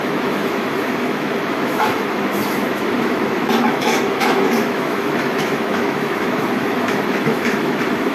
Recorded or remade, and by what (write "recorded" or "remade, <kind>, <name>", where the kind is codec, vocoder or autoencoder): remade, autoencoder, DAC-VAE